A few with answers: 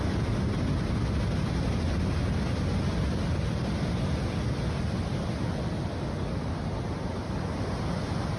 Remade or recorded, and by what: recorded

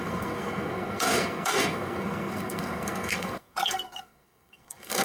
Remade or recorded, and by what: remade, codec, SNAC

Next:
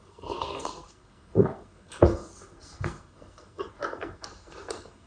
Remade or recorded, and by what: remade, codec, SNAC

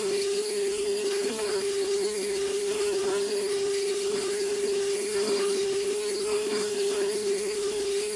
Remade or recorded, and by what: remade, codec, SNAC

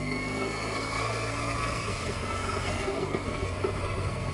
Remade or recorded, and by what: remade, codec, SNAC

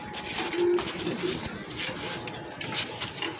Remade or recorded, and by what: recorded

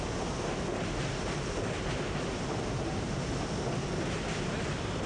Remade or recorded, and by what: recorded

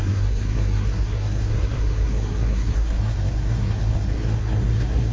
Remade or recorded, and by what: remade, codec, SNAC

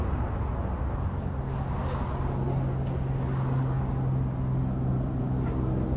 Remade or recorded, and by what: recorded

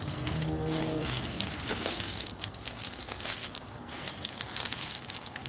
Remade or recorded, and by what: remade, codec, SNAC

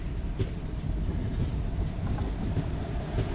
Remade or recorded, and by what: recorded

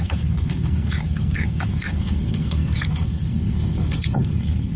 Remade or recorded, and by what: remade, codec, SNAC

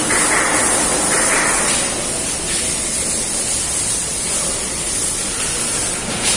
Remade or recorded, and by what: recorded